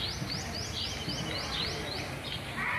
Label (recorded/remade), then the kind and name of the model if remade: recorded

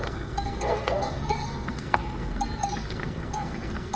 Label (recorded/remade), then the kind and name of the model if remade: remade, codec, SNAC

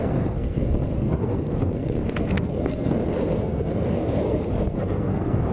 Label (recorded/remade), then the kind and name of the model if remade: remade, codec, SNAC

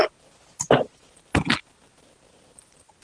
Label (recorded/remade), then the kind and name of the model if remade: recorded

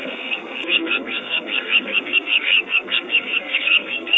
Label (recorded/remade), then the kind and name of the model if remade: remade, codec, SNAC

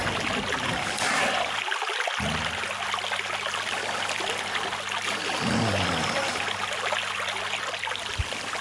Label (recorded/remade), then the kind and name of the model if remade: recorded